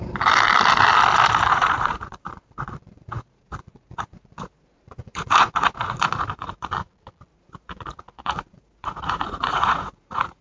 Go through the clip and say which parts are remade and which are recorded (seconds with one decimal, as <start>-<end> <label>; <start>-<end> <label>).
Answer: 0.0-1.5 recorded; 1.5-6.7 remade; 6.7-7.3 recorded; 7.3-10.4 remade